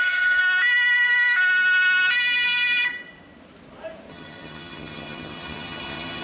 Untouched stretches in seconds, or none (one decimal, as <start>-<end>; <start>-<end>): 0.4-4.1